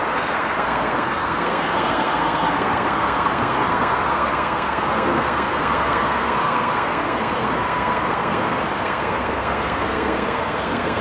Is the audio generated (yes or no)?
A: yes